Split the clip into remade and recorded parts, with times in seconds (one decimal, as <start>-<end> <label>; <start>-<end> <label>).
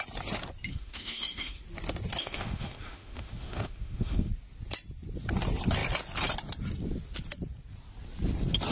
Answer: 0.0-0.7 recorded; 0.7-1.6 remade; 1.6-2.2 recorded; 2.2-4.3 remade; 4.3-8.7 recorded